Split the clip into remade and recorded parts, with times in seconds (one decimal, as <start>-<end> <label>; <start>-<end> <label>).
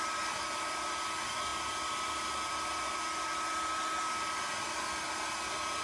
0.0-5.8 recorded